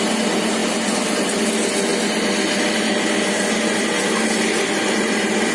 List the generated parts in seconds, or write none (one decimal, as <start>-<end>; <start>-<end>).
none